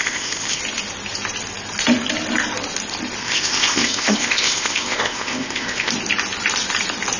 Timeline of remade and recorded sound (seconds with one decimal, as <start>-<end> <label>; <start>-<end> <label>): 0.0-0.6 remade; 0.6-3.2 recorded; 3.2-5.9 remade; 5.9-7.2 recorded